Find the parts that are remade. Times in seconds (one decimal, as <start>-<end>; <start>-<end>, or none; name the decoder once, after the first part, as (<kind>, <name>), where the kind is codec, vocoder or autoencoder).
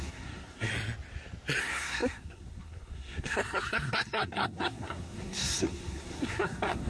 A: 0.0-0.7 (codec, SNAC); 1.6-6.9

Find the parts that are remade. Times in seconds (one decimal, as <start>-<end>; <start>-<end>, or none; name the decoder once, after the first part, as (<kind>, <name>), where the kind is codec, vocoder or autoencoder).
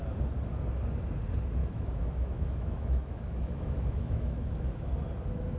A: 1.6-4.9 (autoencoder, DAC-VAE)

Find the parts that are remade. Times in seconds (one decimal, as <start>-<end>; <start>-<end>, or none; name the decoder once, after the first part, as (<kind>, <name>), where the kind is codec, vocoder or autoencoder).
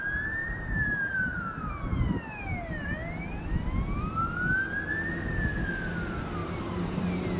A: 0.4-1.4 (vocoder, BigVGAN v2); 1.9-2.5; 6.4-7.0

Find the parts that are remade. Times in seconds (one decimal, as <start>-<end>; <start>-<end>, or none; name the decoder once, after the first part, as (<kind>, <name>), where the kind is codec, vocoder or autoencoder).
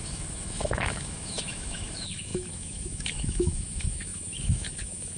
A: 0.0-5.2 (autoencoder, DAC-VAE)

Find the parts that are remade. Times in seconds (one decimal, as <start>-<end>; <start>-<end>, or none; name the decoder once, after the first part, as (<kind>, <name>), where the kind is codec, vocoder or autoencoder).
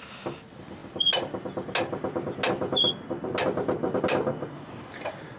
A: none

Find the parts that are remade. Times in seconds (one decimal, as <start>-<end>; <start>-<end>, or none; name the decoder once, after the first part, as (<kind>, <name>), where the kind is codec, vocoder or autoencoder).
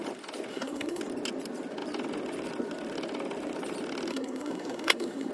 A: 0.5-1.0 (codec, SNAC); 4.1-5.3